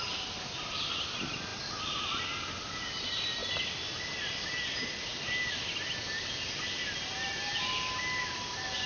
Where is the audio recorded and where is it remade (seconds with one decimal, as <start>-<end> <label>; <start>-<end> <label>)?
0.0-8.9 recorded